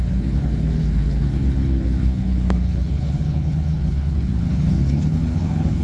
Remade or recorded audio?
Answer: remade